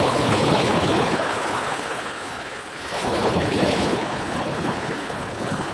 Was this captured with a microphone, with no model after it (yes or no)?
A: no